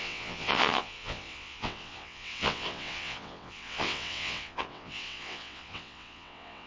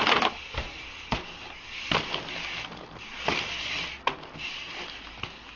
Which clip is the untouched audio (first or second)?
second